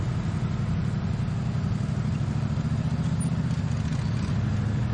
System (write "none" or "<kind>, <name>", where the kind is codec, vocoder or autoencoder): none